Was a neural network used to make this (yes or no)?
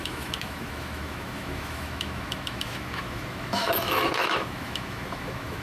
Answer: yes